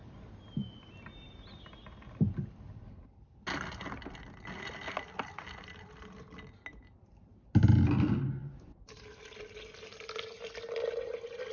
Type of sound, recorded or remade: recorded